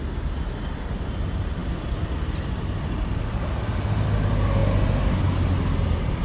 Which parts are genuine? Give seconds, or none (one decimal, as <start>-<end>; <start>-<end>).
0.0-6.2